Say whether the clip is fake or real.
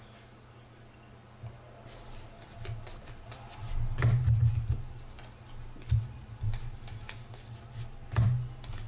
real